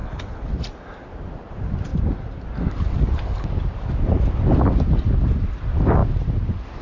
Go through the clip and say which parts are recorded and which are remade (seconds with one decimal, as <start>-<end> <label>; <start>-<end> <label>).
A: 0.0-0.5 remade; 0.5-6.8 recorded